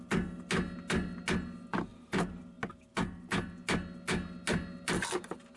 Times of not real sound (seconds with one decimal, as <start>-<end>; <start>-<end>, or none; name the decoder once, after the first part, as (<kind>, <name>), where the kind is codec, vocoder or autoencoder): 1.9-2.4 (vocoder, BigVGAN v2)